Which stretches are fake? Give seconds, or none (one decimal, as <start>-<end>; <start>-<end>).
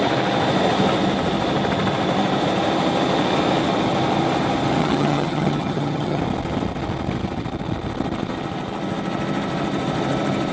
4.8-6.2